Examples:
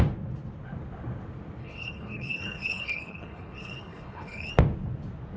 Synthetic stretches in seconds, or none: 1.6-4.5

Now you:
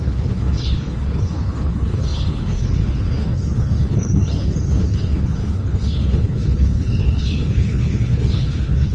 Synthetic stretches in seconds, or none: 0.0-8.9

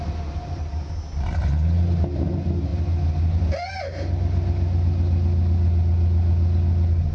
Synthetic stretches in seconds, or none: none

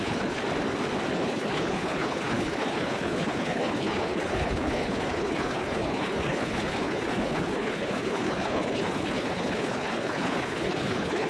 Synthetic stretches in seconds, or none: 0.0-0.4; 1.1-11.3

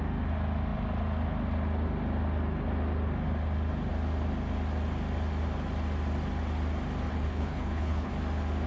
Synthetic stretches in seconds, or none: 7.1-8.1

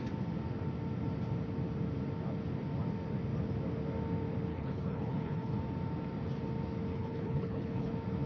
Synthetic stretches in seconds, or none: 4.5-5.6; 6.9-7.9

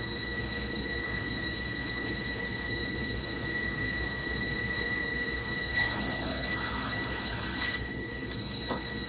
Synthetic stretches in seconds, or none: 0.0-9.1